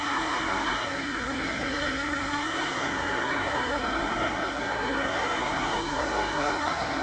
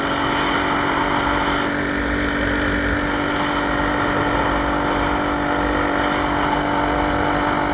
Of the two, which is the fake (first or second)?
first